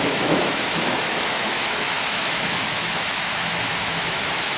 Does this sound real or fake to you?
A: fake